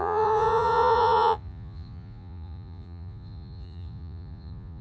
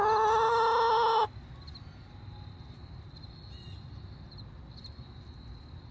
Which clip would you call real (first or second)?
second